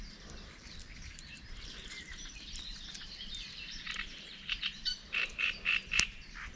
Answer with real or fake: fake